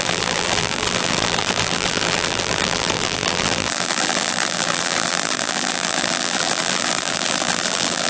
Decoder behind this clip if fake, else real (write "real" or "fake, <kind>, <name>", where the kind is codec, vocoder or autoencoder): fake, vocoder, BigVGAN v2